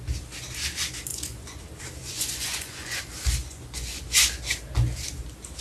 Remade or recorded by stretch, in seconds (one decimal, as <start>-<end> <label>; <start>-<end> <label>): 0.0-1.1 recorded; 1.1-1.6 remade; 1.6-2.0 recorded; 2.0-3.0 remade; 3.0-3.4 recorded; 3.4-4.0 remade; 4.0-5.6 recorded